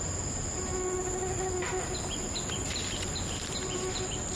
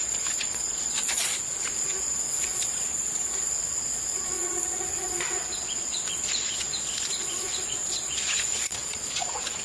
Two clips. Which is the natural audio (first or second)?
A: first